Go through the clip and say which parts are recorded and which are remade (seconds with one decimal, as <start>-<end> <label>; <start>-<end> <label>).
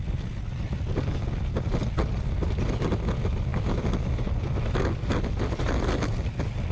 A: 0.0-6.7 recorded